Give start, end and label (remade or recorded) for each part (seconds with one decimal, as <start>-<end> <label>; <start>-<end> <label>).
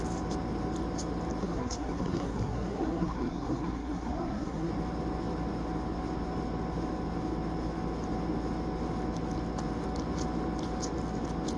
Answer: 0.0-1.4 recorded; 1.4-4.7 remade; 4.7-11.6 recorded